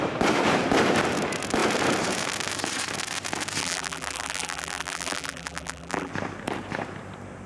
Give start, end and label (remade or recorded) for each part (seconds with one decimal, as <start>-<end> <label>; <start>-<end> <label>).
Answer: 0.0-3.6 recorded; 3.6-6.1 remade; 6.1-7.5 recorded